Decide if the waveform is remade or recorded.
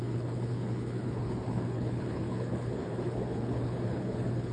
remade